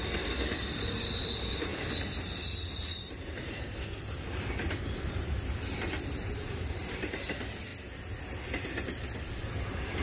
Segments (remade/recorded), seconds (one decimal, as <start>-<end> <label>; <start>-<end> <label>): 0.0-7.7 remade; 7.7-8.7 recorded; 8.7-10.0 remade